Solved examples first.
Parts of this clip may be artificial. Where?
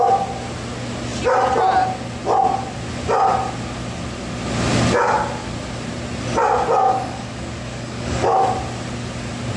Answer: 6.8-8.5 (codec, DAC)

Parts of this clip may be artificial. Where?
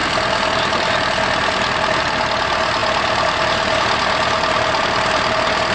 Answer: none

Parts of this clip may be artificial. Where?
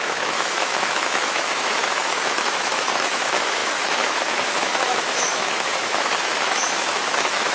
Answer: 0.0-7.5 (autoencoder, DAC-VAE)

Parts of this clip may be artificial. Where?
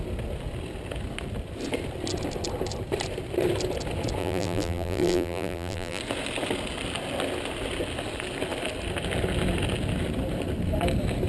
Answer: 4.2-6.0 (vocoder, BigVGAN v2)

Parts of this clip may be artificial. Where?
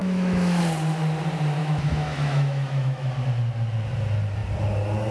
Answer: 0.0-0.6 (autoencoder, DAC-VAE); 1.6-3.1